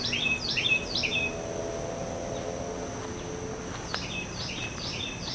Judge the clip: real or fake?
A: real